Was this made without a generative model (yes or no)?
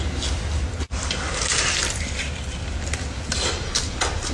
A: yes